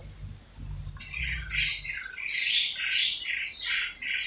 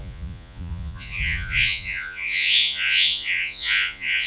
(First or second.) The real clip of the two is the first